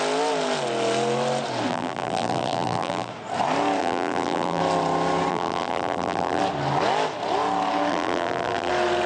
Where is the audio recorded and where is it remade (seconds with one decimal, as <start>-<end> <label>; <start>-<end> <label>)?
0.0-1.7 recorded; 1.7-3.1 remade; 3.1-3.8 recorded; 3.8-4.6 remade; 4.6-5.3 recorded; 5.3-6.4 remade; 6.4-7.9 recorded; 7.9-8.7 remade; 8.7-9.1 recorded